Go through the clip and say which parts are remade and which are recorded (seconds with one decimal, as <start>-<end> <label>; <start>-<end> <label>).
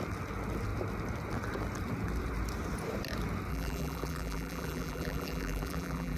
0.0-3.5 recorded; 3.5-6.2 remade